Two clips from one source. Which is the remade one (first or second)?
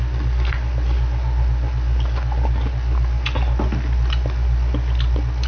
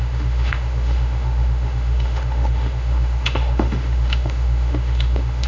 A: second